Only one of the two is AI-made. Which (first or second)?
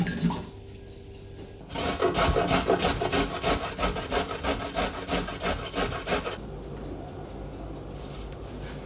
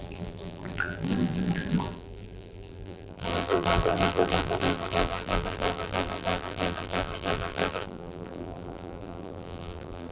second